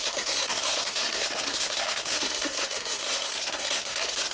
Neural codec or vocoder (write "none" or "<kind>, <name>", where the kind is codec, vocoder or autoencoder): codec, SNAC